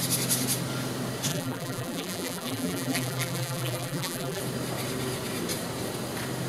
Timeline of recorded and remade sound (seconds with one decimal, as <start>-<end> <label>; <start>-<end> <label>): 0.0-1.3 recorded; 1.3-4.4 remade; 4.4-6.5 recorded